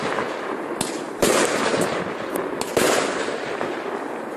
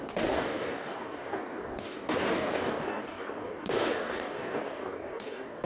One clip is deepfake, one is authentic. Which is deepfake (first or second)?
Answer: second